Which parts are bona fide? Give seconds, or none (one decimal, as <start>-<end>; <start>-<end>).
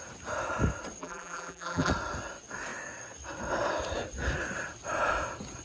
0.0-1.0; 1.9-5.6